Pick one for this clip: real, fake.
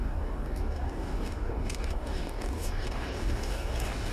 fake